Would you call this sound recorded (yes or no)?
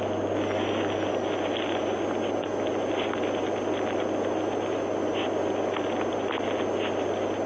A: yes